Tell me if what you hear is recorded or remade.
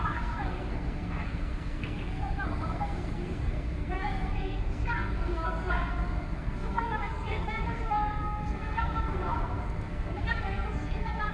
remade